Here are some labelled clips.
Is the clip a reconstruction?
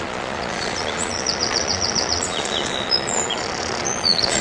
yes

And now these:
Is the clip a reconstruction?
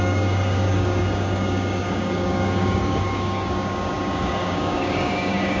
yes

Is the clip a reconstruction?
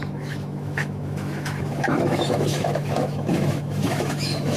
yes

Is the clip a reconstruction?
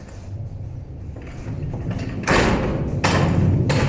no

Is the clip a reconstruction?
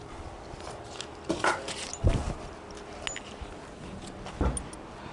no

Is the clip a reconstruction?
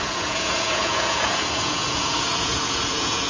yes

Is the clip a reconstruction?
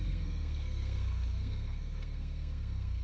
yes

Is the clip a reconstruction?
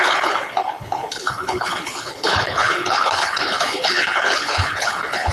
yes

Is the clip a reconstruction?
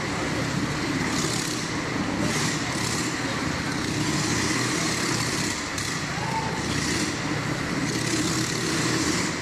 no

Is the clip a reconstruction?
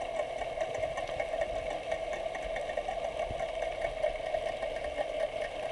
no